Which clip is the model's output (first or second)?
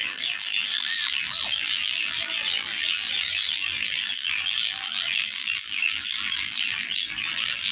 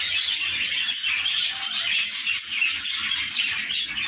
first